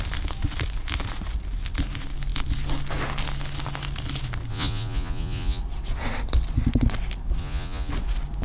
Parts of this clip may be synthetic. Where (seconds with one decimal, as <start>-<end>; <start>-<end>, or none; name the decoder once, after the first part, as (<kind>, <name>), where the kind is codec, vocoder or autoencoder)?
4.5-5.6 (vocoder, Vocos); 7.4-7.9